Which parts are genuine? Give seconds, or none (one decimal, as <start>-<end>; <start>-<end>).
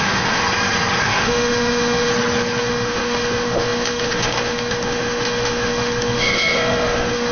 0.4-1.0; 2.1-2.6